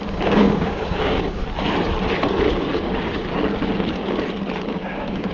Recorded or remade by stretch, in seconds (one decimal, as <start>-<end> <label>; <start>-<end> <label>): 0.0-1.4 remade; 1.4-2.5 recorded; 2.5-4.0 remade; 4.0-4.6 recorded; 4.6-5.3 remade